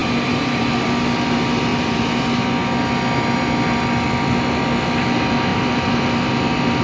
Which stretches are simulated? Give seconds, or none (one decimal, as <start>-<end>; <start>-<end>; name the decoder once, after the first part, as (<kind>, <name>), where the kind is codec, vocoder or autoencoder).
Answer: 0.0-0.7 (vocoder, BigVGAN v2); 1.7-2.2; 5.5-6.3

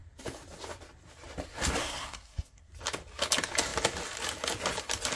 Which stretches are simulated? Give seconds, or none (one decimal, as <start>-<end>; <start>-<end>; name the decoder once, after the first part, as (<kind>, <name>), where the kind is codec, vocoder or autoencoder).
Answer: 1.8-2.7 (codec, SNAC)